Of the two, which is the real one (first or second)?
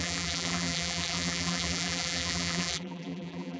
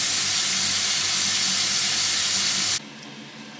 second